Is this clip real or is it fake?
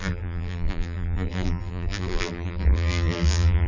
fake